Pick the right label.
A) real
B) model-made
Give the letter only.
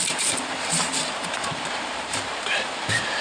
B